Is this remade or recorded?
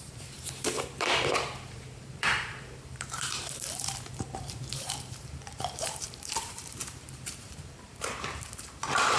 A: remade